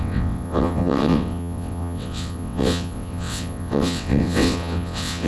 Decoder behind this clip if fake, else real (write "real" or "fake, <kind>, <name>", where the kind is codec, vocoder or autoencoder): fake, vocoder, WaveNeXt